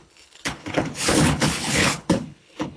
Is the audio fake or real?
fake